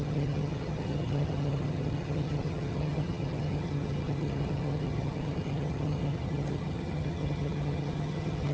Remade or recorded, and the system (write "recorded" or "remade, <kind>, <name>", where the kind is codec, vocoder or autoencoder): remade, vocoder, HiFi-GAN